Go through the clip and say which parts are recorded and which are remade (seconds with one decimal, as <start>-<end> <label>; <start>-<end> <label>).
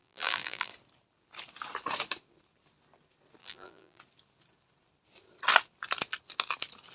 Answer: 0.0-0.7 remade; 0.7-3.4 recorded; 3.4-4.0 remade; 4.0-6.9 recorded